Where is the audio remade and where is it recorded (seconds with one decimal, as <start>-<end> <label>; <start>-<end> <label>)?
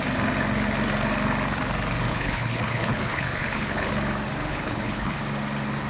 0.0-2.1 recorded; 2.1-3.9 remade; 3.9-4.5 recorded; 4.5-5.2 remade; 5.2-5.9 recorded